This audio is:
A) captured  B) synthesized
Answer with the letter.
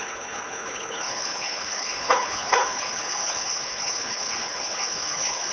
B